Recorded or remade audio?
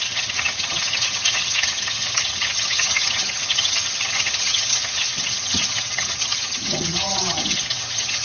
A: remade